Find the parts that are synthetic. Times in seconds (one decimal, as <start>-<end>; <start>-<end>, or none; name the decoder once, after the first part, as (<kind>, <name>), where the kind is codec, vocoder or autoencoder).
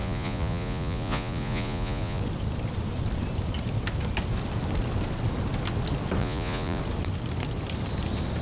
0.0-2.2 (vocoder, Vocos); 6.2-6.8